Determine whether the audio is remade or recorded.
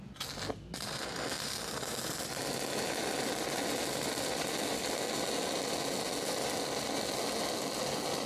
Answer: recorded